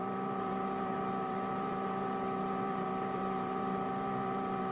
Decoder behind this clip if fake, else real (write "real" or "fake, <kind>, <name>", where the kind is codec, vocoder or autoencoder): fake, vocoder, BigVGAN v2